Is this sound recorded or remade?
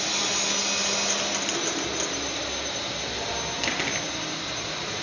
recorded